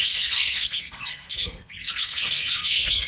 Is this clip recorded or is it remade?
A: remade